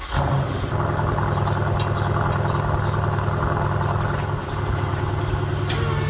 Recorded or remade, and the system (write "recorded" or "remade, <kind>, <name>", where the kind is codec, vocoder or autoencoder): recorded